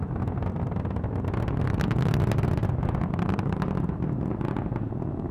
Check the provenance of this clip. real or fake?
real